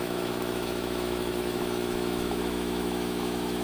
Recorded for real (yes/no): no